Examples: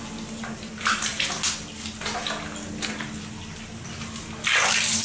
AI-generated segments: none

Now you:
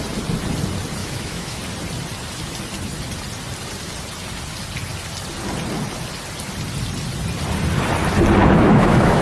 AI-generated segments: 1.0-1.6 (autoencoder, DAC-VAE); 8.4-9.2

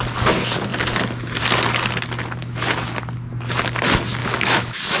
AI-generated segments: 2.4-2.9 (autoencoder, DAC-VAE); 4.2-5.0

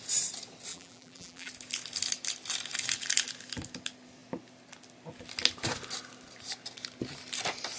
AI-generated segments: 0.7-1.5 (vocoder, BigVGAN v2)

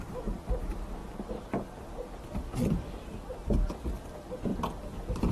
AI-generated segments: 0.0-5.3 (vocoder, BigVGAN v2)

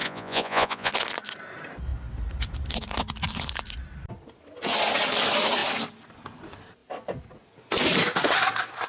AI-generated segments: 0.0-0.9 (vocoder, Vocos)

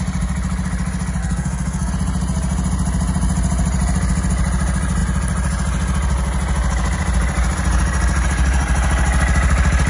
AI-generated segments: 1.2-1.9 (codec, SNAC)

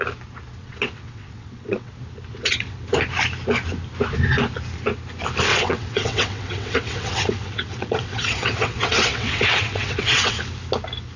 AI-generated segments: 0.6-1.9 (vocoder, WaveNeXt); 2.3-3.0; 5.5-10.4